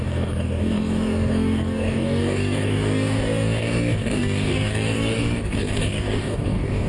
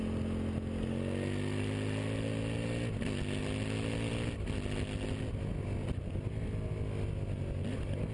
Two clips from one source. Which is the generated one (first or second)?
first